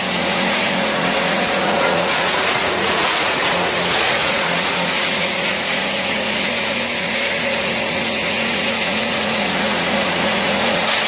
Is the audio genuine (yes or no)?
no